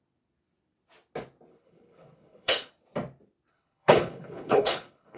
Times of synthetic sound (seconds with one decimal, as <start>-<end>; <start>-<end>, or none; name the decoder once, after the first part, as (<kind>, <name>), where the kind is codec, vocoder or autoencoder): 1.5-2.7 (codec, HILCodec); 3.5-5.2